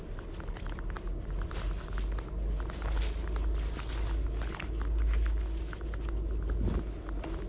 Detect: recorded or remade recorded